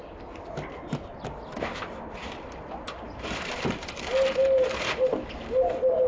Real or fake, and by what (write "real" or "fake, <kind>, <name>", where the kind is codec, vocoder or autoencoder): real